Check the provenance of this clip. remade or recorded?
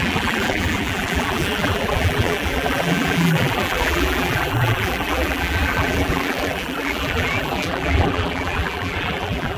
remade